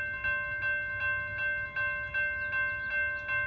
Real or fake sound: real